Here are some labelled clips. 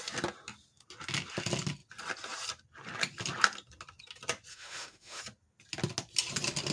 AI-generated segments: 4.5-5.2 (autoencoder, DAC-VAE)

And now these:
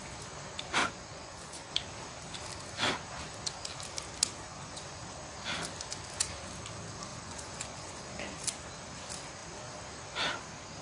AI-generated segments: 0.8-1.7 (vocoder, Vocos); 4.5-5.0; 7.1-8.0

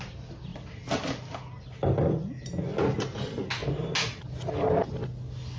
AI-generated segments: none